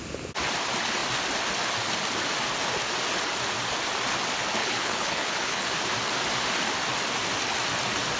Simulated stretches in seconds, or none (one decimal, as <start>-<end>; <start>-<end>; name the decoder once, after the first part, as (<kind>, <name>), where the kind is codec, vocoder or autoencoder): 4.6-5.6 (codec, HILCodec)